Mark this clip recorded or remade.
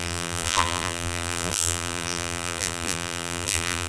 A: remade